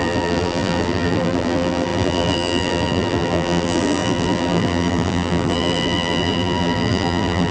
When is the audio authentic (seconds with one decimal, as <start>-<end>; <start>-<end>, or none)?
none